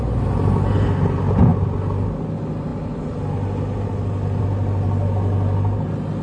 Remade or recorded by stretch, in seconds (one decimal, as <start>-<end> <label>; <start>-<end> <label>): 0.0-6.2 recorded